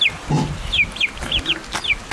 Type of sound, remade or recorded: recorded